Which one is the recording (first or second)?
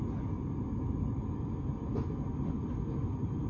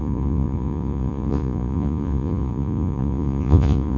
first